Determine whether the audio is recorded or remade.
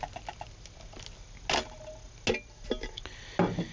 recorded